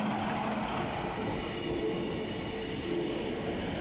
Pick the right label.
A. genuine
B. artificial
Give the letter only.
A